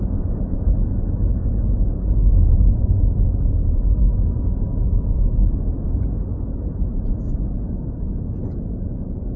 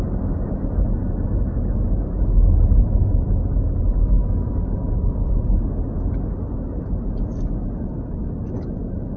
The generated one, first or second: first